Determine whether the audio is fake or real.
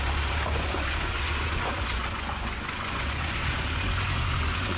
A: fake